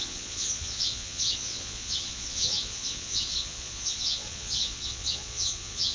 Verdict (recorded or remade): remade